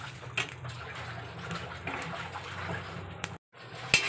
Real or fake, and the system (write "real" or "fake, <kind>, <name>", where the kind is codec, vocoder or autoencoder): real